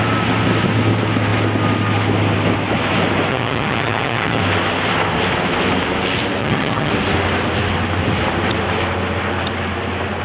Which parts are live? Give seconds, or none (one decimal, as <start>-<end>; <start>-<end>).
0.0-3.3; 4.4-6.4; 6.9-10.2